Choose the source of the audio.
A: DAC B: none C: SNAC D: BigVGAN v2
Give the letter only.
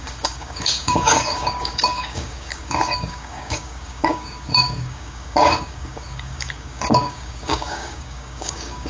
A